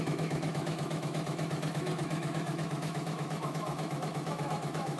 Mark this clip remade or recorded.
remade